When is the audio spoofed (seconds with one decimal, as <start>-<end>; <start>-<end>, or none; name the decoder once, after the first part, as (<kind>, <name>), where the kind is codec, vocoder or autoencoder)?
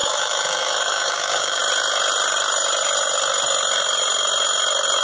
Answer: 0.0-1.6 (autoencoder, DAC-VAE)